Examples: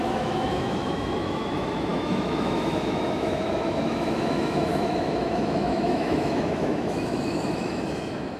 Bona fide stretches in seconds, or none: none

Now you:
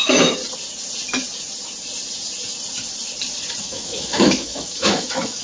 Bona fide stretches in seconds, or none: 0.4-3.6

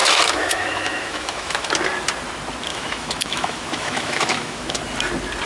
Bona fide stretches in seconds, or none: 1.7-2.7; 4.8-5.5

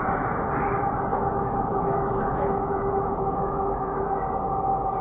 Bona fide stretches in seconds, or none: 0.0-1.1; 4.1-5.0

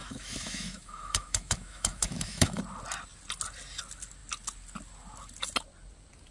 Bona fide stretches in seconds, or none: 2.6-6.3

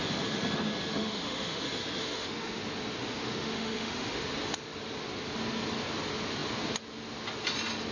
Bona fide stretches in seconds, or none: 0.0-0.9; 1.6-2.0; 2.6-3.0; 4.2-7.9

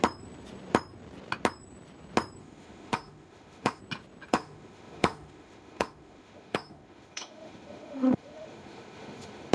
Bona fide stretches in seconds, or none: 0.0-2.4; 3.8-4.3

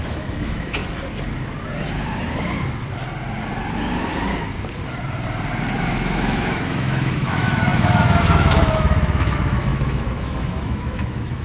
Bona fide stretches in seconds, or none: 0.8-5.7